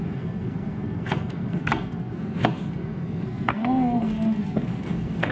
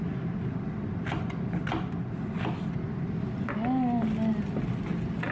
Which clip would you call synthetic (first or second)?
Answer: first